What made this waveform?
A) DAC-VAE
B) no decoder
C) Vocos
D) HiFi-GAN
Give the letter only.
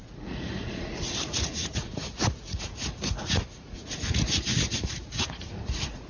C